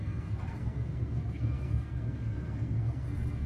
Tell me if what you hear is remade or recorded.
remade